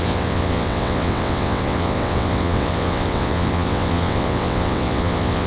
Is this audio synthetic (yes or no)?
yes